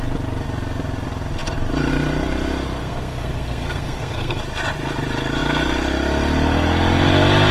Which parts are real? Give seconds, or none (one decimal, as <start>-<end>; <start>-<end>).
0.0-2.8; 4.4-7.5